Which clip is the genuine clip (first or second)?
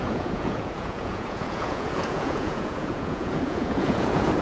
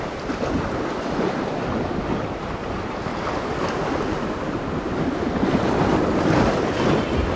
second